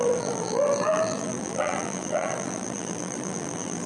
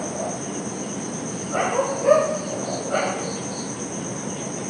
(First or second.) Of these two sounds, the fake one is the first